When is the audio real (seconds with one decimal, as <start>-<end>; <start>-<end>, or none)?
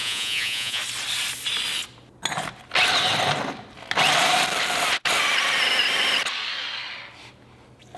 0.8-8.0